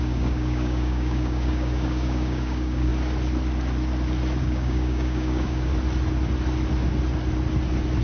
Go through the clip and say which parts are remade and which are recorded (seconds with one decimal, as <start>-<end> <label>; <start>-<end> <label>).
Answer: 0.0-2.9 remade; 2.9-4.4 recorded; 4.4-5.7 remade; 5.7-8.0 recorded